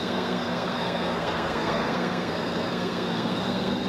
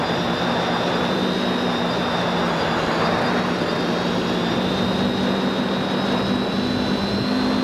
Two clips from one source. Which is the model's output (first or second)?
first